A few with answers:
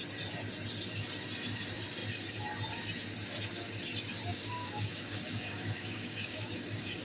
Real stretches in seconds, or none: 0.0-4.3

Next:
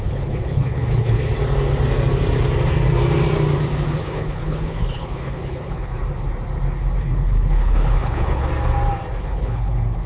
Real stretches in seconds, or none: 1.3-4.0; 5.9-7.0; 8.5-9.2

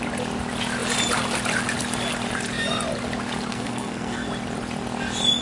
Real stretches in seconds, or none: 0.0-3.5; 4.3-5.4

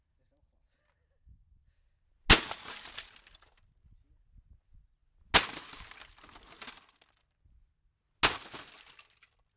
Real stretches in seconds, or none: 0.0-9.6